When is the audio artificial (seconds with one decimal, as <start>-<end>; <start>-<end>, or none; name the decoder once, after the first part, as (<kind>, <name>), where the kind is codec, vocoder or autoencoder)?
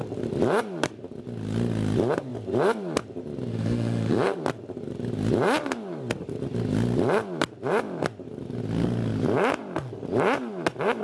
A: 3.5-4.4 (autoencoder, DAC-VAE)